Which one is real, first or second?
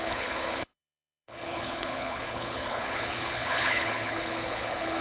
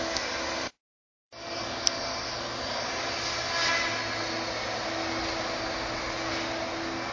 second